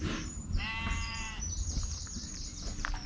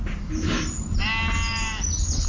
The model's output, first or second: first